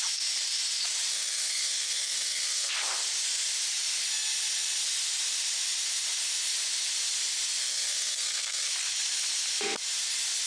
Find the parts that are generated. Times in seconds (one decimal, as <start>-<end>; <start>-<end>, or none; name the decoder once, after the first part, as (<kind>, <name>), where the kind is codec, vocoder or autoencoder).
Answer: 1.1-2.7 (codec, SNAC); 7.6-8.7